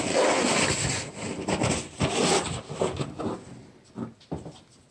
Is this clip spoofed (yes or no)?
no